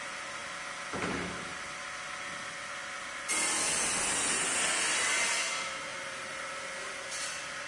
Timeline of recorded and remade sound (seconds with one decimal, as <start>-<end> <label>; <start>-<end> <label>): 0.0-7.7 recorded